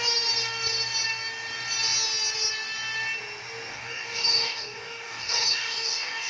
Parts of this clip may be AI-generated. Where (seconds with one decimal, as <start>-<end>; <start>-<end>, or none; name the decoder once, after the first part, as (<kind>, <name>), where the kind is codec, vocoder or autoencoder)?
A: 3.7-6.3 (codec, DAC)